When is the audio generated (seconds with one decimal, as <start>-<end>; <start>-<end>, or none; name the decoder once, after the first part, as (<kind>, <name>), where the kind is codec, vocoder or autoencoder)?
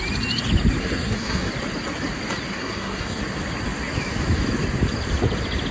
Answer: 0.8-1.5 (codec, SNAC); 2.5-3.2